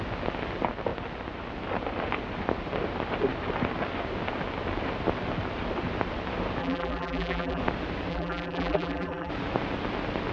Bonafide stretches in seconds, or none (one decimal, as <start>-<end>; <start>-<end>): 0.0-6.6; 7.6-8.1; 9.3-10.3